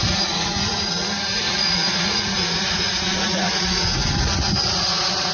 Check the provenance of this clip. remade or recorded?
remade